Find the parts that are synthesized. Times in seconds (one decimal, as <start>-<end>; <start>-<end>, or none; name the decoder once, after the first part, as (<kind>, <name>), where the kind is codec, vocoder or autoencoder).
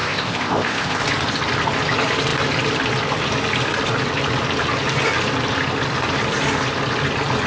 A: 0.0-1.0 (codec, ZipCodec)